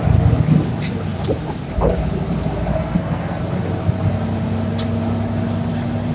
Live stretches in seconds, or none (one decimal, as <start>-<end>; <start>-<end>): 0.0-2.7; 3.4-6.1